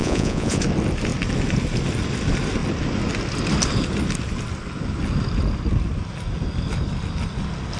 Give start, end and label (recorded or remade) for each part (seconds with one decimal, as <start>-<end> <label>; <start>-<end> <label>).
0.0-0.6 remade; 0.6-7.8 recorded